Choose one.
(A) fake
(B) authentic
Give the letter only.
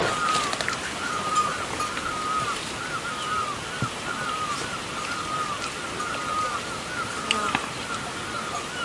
B